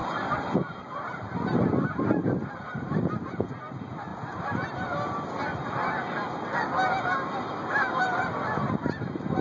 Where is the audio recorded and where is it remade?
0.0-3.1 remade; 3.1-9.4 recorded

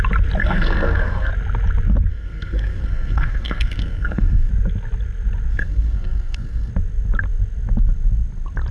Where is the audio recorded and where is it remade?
0.0-0.4 recorded; 0.4-1.3 remade; 1.3-2.1 recorded; 2.1-4.5 remade; 4.5-5.5 recorded; 5.5-6.7 remade; 6.7-8.7 recorded

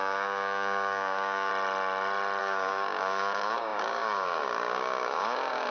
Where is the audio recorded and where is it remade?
0.0-1.5 remade; 1.5-2.4 recorded; 2.4-5.7 remade